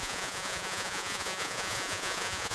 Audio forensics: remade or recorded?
remade